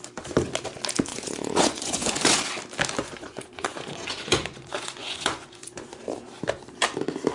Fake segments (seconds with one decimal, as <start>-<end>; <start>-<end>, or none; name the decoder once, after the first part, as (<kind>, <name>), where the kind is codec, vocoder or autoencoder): 1.1-2.4 (vocoder, Vocos); 3.0-6.0